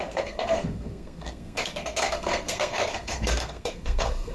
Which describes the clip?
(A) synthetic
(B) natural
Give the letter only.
A